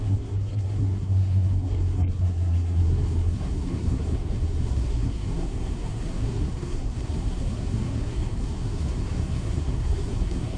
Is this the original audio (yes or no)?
no